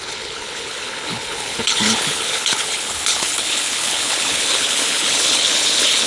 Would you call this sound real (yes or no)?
no